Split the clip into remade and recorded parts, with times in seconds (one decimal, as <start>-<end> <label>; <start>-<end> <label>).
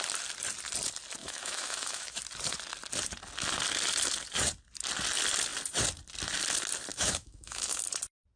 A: 0.0-1.2 recorded; 1.2-2.2 remade; 2.2-6.9 recorded; 6.9-7.8 remade; 7.8-8.4 recorded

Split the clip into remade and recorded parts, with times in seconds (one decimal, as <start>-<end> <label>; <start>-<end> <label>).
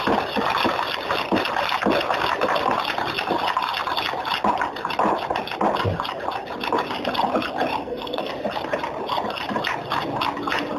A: 0.0-7.8 recorded; 7.8-8.3 remade; 8.3-10.8 recorded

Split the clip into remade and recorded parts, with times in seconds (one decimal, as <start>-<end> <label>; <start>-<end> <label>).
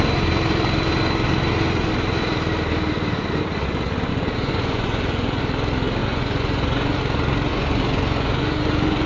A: 0.0-4.1 recorded; 4.1-5.4 remade; 5.4-6.0 recorded; 6.0-7.0 remade; 7.0-7.5 recorded; 7.5-9.1 remade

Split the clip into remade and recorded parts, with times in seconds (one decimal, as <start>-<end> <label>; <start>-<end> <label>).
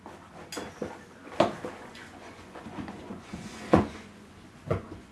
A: 0.0-1.8 recorded; 1.8-5.1 remade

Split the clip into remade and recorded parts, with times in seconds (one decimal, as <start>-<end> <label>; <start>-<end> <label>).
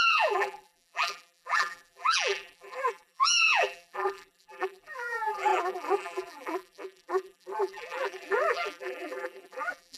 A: 0.0-10.0 remade